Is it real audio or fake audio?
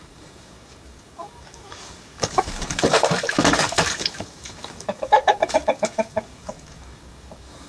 fake